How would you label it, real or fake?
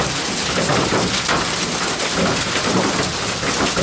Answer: real